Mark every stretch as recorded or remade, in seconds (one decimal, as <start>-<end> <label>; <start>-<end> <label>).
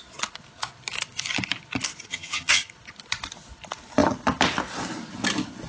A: 0.0-2.1 recorded; 2.1-2.6 remade; 2.6-5.7 recorded